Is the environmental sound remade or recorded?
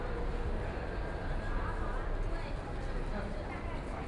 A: recorded